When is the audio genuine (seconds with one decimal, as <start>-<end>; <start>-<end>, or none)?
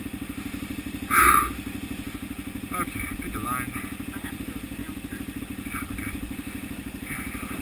0.0-7.6